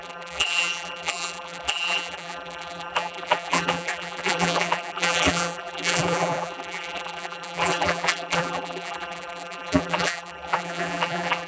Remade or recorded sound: remade